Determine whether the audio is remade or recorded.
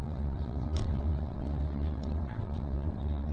remade